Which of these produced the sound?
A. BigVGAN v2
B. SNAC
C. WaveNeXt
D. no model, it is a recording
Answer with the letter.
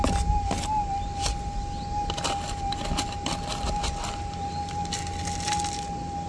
D